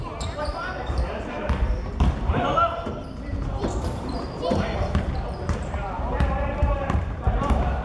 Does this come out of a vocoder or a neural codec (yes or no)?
yes